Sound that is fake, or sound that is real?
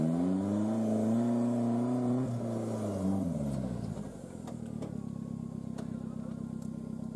real